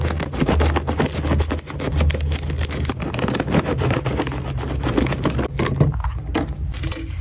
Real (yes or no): yes